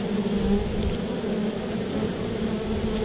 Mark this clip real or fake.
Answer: real